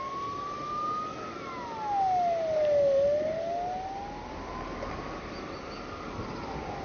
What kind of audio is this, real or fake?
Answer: real